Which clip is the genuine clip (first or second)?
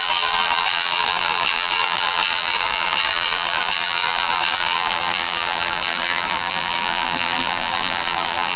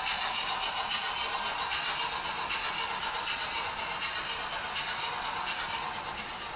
second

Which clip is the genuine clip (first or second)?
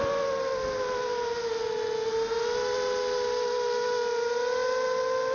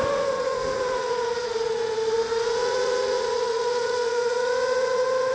first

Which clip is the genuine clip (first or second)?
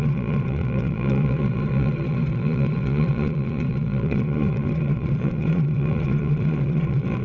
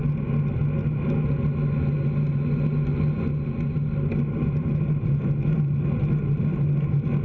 second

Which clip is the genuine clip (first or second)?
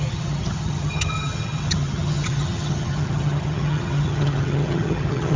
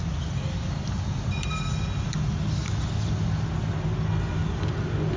second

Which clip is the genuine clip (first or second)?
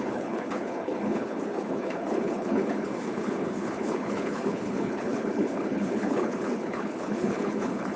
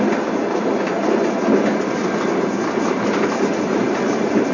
second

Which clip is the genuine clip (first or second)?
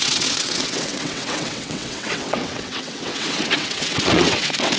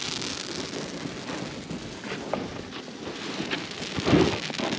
second